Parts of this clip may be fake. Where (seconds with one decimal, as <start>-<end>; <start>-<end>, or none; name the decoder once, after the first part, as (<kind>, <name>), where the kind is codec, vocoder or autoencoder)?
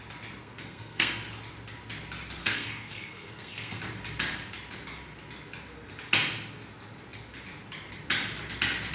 0.4-1.1 (codec, SNAC); 2.4-3.8